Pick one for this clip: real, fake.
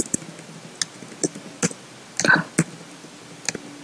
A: real